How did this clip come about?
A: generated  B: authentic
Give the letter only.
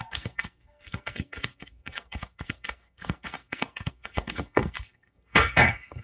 A